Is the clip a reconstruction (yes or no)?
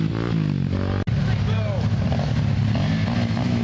no